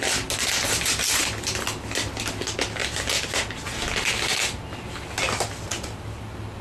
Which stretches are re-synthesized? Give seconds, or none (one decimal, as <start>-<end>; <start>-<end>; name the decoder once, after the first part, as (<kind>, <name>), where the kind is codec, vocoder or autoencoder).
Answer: none